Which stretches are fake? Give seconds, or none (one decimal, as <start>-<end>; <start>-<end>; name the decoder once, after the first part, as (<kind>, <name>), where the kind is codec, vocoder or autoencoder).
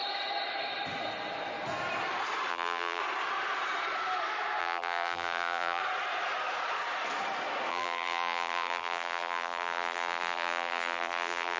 2.5-3.0 (vocoder, BigVGAN v2); 4.6-5.8; 7.7-11.6